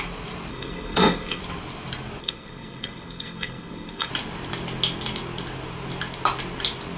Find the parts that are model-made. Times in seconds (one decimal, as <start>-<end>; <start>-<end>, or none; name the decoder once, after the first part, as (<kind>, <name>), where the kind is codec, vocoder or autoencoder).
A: 0.5-1.4 (codec, SNAC); 2.2-4.1